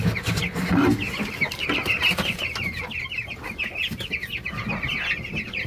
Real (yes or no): yes